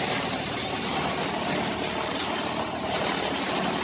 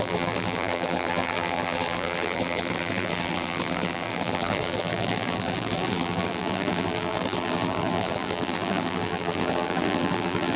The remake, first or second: second